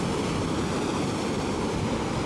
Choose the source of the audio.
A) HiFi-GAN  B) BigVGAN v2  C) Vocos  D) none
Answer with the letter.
D